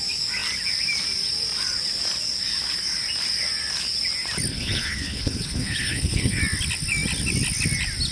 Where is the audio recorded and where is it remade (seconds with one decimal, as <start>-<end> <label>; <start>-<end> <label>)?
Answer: 0.0-4.5 recorded; 4.5-6.4 remade; 6.4-8.1 recorded